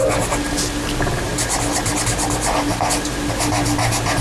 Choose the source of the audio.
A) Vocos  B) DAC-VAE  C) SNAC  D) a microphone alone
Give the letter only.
D